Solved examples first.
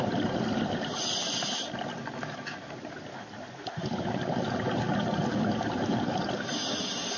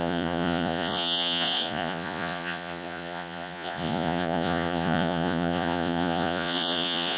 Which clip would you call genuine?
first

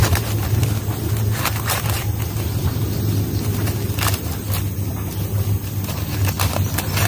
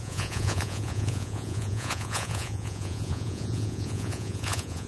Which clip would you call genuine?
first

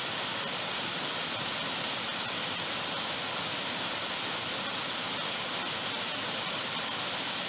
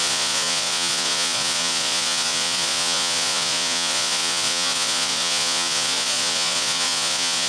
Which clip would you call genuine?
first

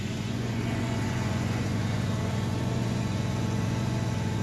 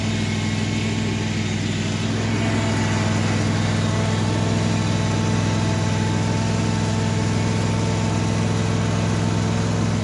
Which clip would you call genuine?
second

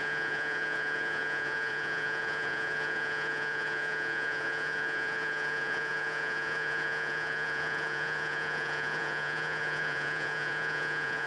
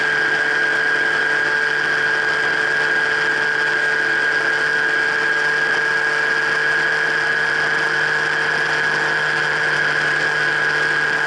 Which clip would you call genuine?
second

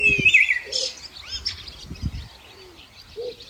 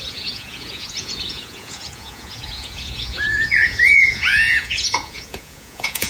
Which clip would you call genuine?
first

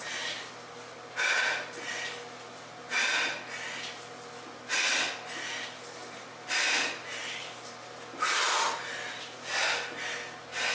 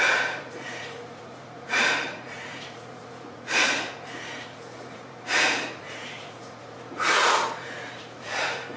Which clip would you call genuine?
first